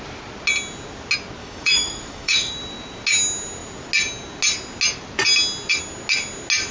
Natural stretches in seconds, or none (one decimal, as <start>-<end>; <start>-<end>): 0.0-1.4; 2.5-6.7